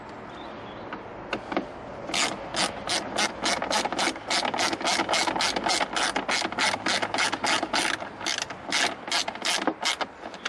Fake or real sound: real